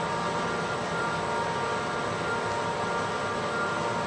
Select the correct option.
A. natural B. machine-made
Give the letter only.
A